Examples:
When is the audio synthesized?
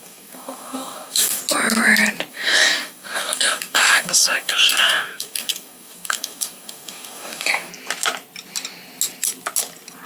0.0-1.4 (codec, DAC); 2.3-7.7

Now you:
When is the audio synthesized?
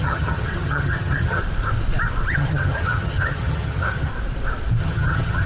0.0-1.4 (vocoder, HiFi-GAN); 2.3-4.1; 4.8-5.5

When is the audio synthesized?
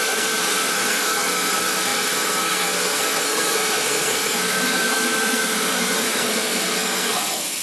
0.0-7.6 (codec, SNAC)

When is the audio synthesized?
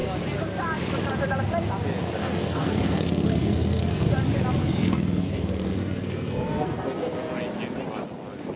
2.2-4.1 (codec, SNAC); 4.6-7.1